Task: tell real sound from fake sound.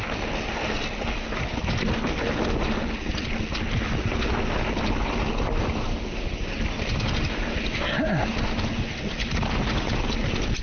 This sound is real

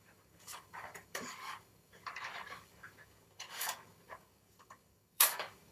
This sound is fake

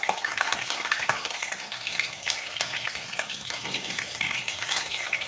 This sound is fake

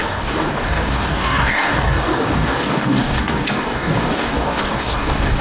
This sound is fake